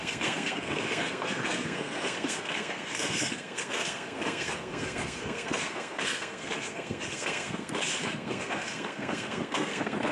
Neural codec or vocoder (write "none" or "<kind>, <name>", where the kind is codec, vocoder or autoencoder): codec, SNAC